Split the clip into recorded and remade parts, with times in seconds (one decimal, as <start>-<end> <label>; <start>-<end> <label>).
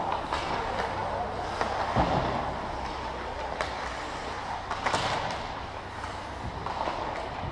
0.0-7.5 recorded